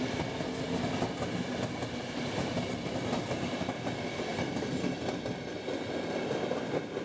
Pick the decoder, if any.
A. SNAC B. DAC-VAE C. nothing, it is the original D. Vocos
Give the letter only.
C